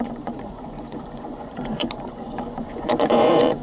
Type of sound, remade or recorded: remade